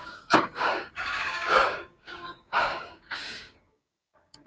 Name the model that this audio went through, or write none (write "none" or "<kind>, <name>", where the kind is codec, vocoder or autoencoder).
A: codec, DAC